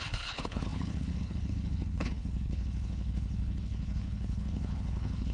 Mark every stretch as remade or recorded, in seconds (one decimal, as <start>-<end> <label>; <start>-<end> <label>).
0.0-5.3 remade